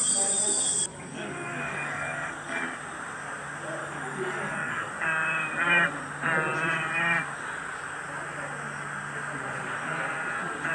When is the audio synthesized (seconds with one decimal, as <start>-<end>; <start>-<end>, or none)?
0.9-2.6; 3.8-4.9